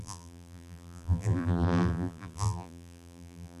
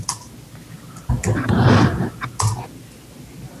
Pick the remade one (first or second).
first